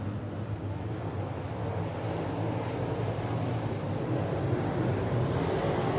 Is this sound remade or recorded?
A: recorded